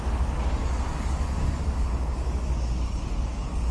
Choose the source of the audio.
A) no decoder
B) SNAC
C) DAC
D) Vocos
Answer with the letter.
C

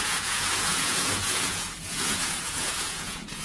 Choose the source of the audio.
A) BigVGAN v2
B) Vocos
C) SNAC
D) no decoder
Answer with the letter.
B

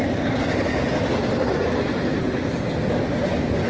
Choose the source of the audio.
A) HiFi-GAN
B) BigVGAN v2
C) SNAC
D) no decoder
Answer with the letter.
D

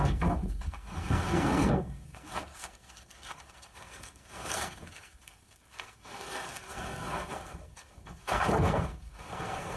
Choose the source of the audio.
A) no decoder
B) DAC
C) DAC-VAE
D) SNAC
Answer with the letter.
D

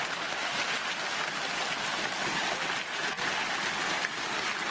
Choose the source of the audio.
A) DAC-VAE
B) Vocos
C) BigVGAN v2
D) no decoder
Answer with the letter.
D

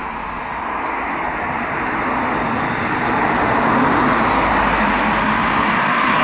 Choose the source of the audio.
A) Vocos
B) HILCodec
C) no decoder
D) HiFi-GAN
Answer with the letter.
C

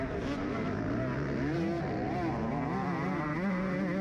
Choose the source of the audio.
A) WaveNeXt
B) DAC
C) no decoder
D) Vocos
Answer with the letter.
C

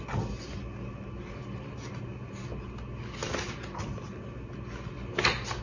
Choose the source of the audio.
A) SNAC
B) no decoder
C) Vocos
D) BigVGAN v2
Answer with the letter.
B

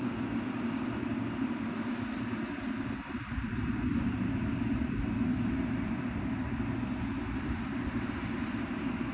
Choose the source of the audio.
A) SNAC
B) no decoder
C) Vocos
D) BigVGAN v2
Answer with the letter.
D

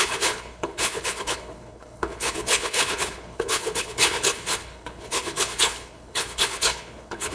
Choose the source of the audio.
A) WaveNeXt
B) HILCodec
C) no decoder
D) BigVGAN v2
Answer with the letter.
B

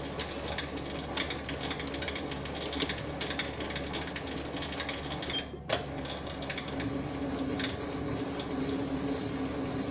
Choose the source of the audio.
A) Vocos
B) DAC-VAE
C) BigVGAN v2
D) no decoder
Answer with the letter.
D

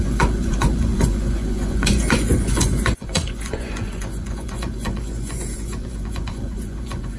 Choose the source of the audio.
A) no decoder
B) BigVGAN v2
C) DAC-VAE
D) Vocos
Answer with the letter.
D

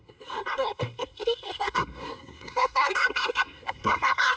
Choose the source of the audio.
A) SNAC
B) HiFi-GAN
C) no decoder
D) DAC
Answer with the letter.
A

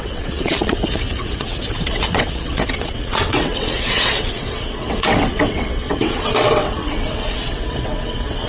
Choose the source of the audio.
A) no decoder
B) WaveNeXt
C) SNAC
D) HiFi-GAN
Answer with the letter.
B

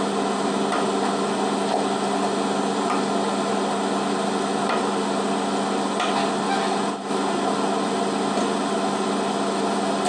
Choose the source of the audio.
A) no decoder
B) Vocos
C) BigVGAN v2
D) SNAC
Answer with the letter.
A